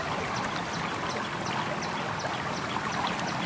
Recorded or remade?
recorded